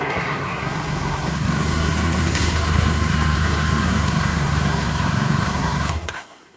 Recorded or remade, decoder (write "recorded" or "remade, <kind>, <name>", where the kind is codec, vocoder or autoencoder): remade, codec, SNAC